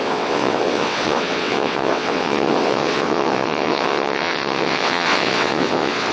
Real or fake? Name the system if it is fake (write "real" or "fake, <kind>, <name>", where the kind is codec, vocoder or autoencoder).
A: fake, vocoder, WaveNeXt